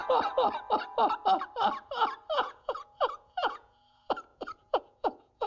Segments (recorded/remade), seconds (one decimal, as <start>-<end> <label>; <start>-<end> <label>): 0.0-2.3 recorded; 2.3-5.5 remade